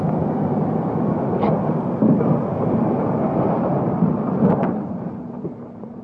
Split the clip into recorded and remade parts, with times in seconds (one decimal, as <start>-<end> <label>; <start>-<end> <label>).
0.0-0.5 recorded; 0.5-1.5 remade; 1.5-2.5 recorded; 2.5-6.0 remade